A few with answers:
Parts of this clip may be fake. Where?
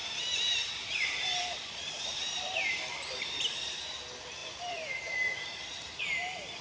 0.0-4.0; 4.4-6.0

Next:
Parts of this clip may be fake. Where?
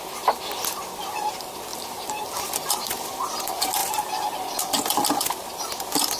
1.7-2.8; 3.8-4.7